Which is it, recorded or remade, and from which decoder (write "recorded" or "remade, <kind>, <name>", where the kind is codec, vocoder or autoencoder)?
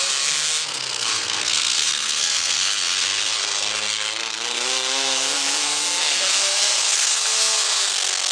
remade, codec, SNAC